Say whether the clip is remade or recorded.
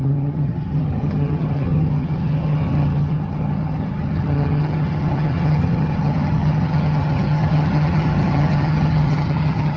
remade